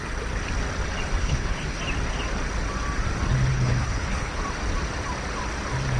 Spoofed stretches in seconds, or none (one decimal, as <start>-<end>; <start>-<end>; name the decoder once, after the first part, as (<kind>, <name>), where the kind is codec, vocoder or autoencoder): 1.2-1.8 (codec, HILCodec); 3.5-4.4